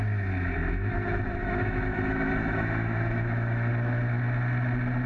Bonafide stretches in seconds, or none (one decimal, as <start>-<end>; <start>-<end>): 0.0-0.6; 3.7-5.1